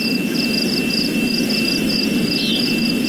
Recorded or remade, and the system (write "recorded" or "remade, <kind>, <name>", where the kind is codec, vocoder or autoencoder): recorded